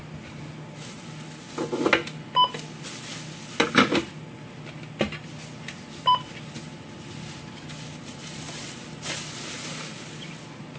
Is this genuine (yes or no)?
yes